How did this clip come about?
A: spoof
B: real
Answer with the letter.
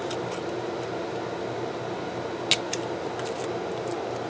B